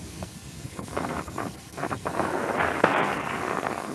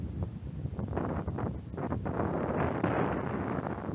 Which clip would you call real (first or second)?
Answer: second